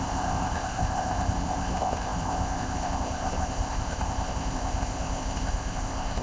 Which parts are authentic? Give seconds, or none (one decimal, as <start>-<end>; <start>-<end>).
none